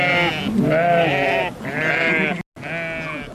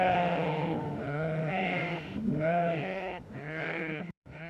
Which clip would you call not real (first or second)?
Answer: second